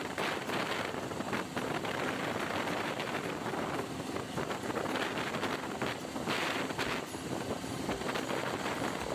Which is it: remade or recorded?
recorded